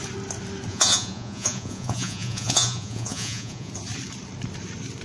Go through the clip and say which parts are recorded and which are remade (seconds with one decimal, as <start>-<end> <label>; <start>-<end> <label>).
0.0-0.7 recorded; 0.7-3.7 remade; 3.7-5.0 recorded